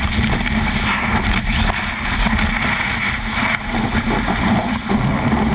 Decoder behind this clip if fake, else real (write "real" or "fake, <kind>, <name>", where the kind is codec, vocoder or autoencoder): real